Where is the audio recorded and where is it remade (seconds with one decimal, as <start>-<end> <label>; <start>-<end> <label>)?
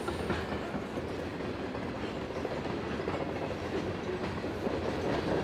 0.0-5.4 recorded